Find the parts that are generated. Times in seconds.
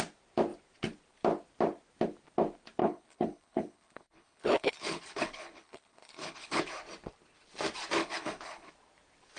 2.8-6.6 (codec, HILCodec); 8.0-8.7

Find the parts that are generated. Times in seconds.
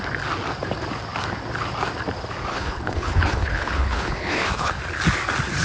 2.5-4.7 (codec, HILCodec)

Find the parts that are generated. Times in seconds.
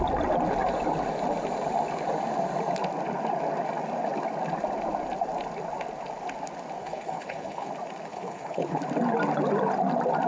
6.8-7.7 (codec, HILCodec); 8.1-8.8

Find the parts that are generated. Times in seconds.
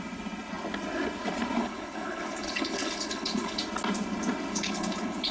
1.6-3.6 (codec, HILCodec); 4.5-5.3